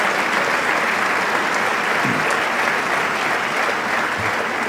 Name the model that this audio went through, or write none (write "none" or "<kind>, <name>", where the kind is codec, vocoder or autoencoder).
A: none